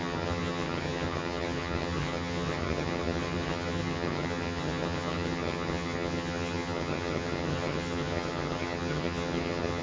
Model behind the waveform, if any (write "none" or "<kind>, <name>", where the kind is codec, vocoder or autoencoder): vocoder, HiFi-GAN